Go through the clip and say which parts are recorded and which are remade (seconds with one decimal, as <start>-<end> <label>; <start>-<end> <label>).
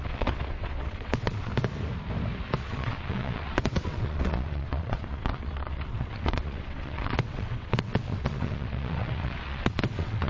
0.0-1.5 remade; 1.5-2.6 recorded; 2.6-10.3 remade